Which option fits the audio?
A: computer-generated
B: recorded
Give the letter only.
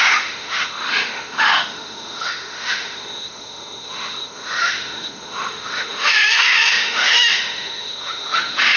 A